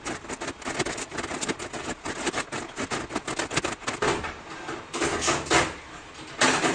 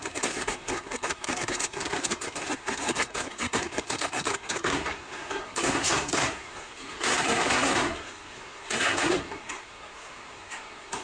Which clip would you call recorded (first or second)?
first